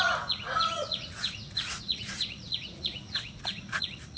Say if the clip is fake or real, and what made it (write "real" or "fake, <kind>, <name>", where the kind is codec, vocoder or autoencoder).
fake, vocoder, Vocos